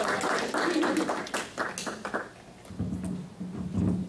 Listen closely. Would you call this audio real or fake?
real